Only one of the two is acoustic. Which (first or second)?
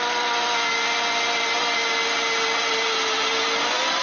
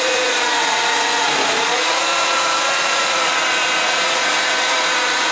first